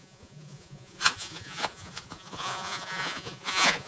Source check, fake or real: fake